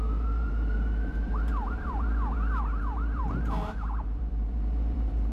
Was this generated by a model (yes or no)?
yes